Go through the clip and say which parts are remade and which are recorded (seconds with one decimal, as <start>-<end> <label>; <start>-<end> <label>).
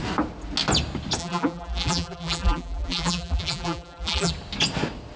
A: 0.0-1.2 recorded; 1.2-4.3 remade; 4.3-5.2 recorded